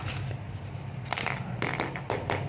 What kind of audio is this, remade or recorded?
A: recorded